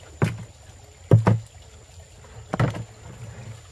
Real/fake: real